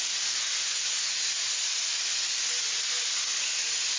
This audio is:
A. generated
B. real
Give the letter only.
B